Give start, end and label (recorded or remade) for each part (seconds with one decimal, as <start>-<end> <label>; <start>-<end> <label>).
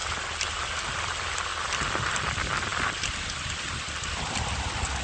0.0-5.0 recorded